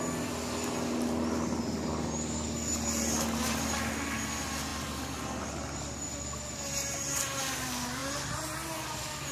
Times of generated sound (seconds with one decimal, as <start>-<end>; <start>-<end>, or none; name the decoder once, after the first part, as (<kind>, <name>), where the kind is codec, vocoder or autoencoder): none